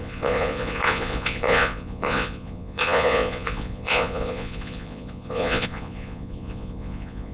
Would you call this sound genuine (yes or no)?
no